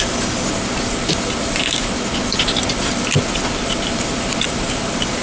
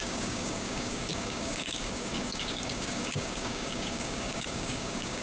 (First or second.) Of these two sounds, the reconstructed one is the second